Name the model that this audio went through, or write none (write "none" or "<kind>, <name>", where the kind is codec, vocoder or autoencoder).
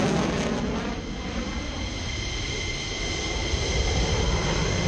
none